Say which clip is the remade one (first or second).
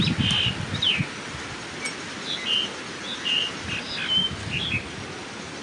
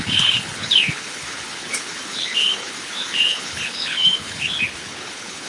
second